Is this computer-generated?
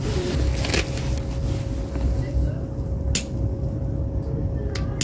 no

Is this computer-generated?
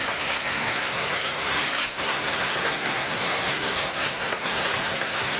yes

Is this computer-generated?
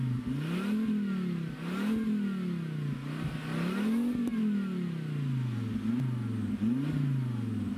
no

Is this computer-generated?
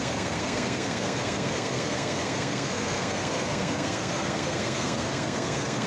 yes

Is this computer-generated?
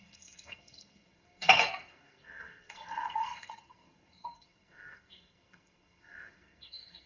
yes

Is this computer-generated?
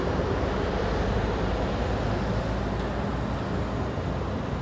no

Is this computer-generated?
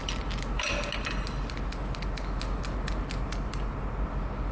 no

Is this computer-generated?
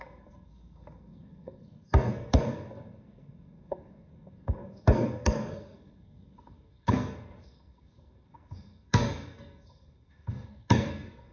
yes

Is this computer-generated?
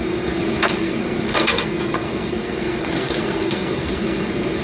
yes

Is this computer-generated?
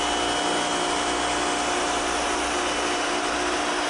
no